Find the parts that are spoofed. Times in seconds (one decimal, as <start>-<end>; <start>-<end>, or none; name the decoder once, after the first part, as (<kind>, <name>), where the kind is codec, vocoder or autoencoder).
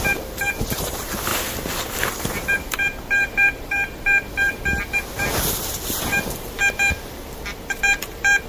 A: 0.0-8.5 (vocoder, BigVGAN v2)